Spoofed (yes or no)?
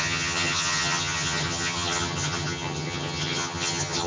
yes